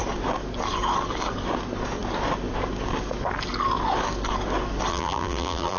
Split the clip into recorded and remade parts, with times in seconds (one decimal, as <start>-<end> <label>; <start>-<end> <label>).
0.0-4.9 recorded; 4.9-5.8 remade